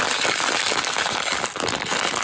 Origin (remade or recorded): recorded